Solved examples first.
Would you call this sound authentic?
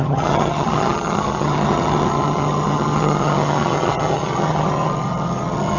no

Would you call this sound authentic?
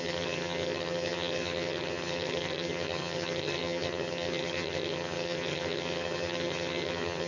no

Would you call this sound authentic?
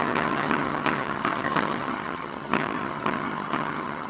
no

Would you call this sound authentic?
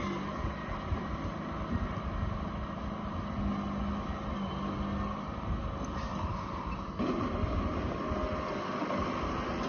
yes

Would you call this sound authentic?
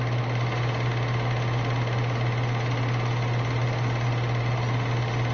yes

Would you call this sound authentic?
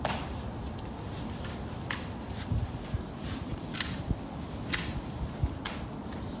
yes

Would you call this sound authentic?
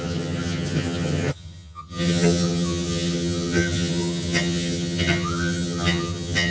no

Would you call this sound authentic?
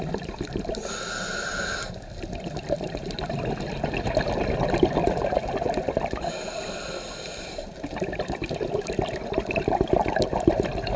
yes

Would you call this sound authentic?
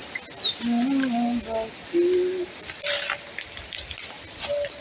yes